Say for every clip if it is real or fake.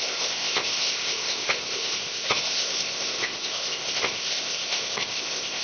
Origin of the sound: fake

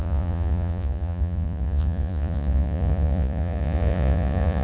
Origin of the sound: fake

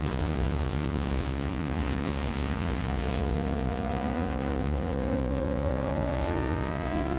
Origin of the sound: fake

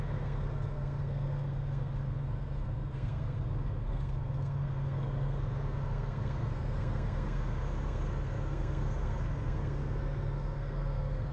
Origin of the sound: fake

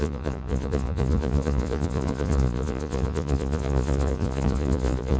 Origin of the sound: fake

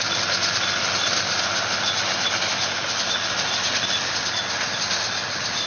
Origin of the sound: real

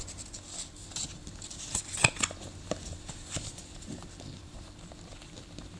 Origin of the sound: real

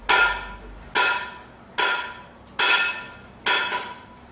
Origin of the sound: real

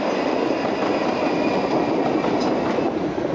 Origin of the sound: real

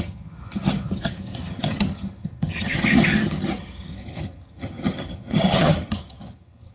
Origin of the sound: fake